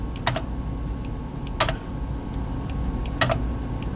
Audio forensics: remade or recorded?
recorded